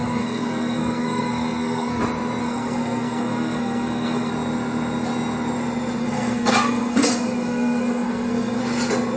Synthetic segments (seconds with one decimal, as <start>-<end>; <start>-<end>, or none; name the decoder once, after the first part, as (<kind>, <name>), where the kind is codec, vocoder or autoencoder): 0.0-2.0 (codec, SNAC); 2.4-4.3; 6.0-8.6